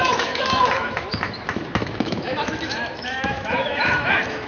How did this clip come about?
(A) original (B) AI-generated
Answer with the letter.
B